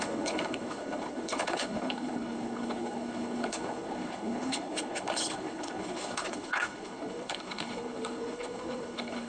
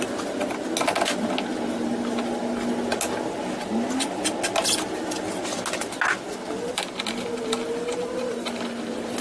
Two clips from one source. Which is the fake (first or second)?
first